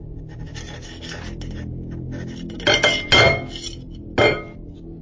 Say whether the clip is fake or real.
real